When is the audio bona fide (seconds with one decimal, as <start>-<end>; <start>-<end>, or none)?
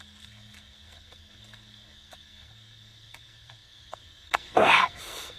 none